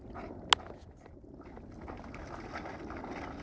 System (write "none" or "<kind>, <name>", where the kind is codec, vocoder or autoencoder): none